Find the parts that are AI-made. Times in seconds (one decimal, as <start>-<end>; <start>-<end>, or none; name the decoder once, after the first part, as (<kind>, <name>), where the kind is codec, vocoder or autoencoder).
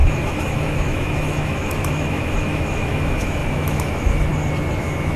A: 0.0-4.3 (autoencoder, DAC-VAE); 4.8-5.2